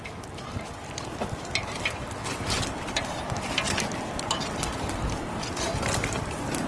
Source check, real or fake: real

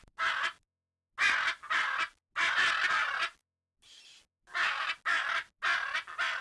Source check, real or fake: real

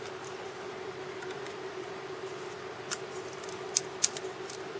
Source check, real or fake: real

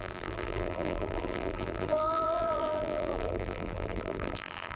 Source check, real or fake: fake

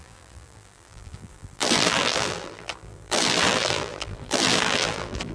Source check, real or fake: fake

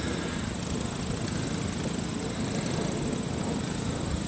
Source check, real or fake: real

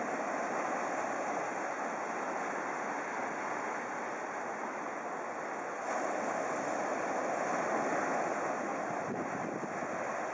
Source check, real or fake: real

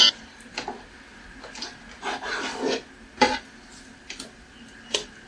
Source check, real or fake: fake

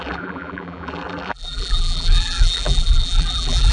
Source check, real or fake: fake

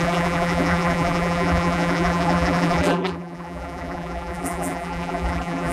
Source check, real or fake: fake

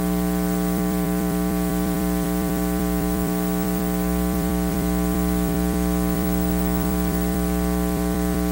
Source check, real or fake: fake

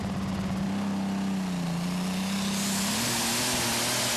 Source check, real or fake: real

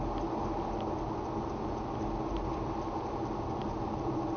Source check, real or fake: real